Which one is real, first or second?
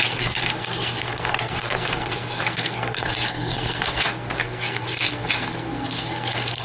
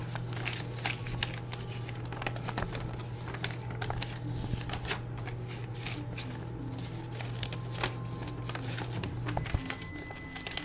second